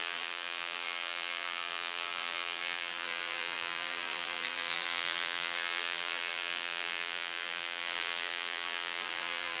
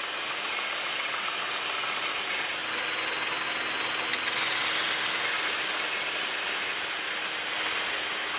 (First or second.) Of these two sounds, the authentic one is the second